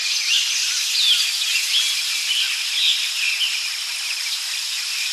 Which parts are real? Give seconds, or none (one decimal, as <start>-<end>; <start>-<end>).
0.0-5.1